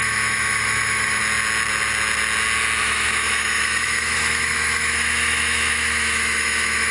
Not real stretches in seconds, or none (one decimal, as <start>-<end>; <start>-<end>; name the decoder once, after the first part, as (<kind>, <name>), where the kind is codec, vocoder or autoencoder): 0.0-1.2 (autoencoder, DAC-VAE); 2.8-6.9